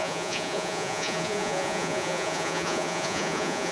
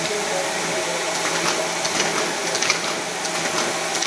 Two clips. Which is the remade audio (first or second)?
first